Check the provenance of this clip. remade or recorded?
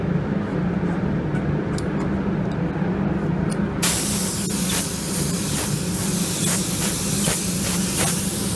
recorded